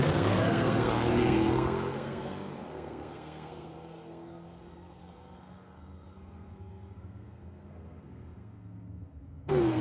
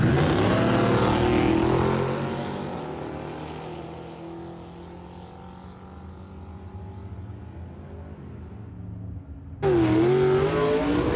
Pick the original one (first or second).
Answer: second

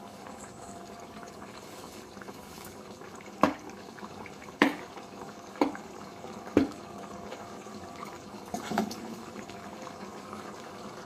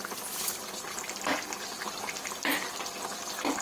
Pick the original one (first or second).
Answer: second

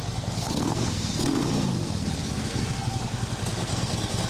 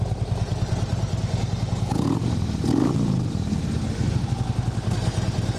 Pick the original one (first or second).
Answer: second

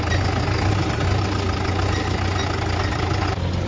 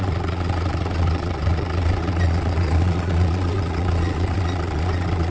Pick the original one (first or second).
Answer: first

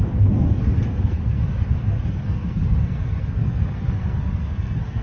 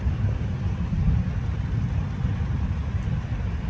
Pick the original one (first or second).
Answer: second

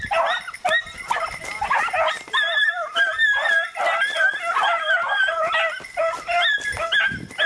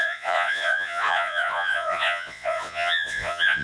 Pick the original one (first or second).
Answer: first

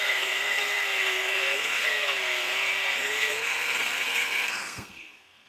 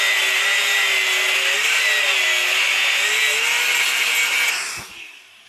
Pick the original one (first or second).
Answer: second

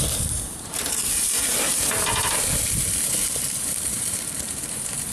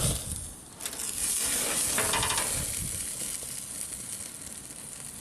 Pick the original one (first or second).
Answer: second